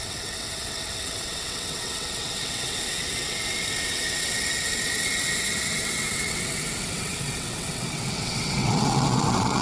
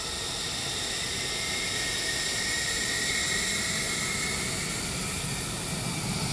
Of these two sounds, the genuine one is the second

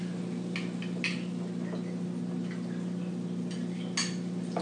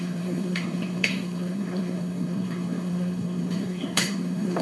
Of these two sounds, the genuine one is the first